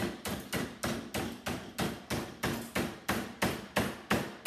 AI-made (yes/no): no